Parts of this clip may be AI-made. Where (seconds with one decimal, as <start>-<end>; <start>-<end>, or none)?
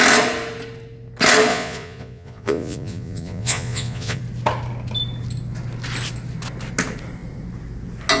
1.5-4.2